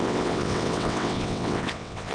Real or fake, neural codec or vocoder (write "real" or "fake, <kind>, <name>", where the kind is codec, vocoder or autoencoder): fake, vocoder, WaveNeXt